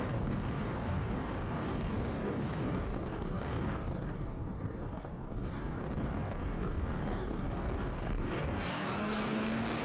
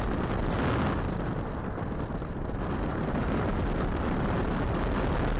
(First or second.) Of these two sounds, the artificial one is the first